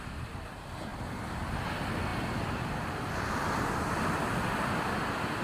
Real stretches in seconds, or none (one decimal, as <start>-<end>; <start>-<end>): 0.0-5.4

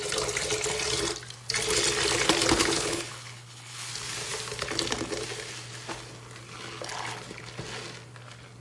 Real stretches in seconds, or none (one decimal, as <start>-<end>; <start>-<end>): 0.0-2.6; 3.9-8.6

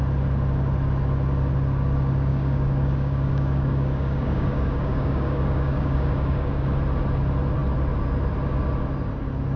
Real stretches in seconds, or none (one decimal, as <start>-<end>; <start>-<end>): 0.0-2.3; 6.7-9.6

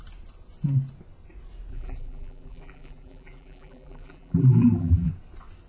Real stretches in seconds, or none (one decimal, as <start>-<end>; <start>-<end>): 0.0-1.7; 5.1-5.7